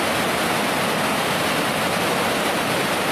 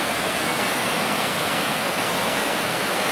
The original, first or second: first